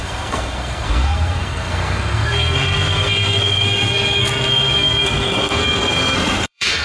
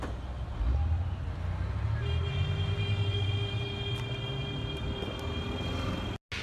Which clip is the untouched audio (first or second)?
second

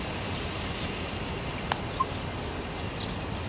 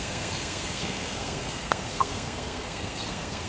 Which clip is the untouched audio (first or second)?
first